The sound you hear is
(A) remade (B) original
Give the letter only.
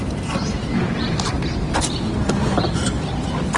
B